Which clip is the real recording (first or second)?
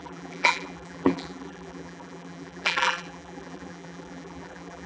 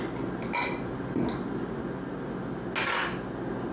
second